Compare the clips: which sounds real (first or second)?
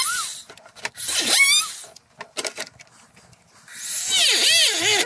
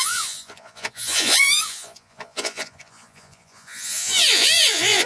first